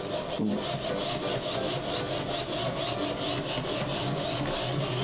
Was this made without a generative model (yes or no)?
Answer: yes